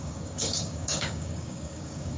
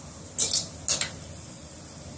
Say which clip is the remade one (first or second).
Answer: first